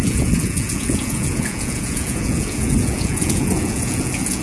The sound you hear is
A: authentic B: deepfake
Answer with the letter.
B